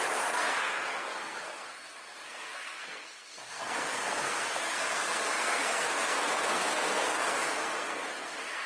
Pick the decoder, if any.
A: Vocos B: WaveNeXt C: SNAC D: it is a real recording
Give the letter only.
C